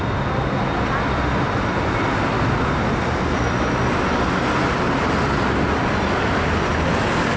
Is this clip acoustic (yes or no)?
yes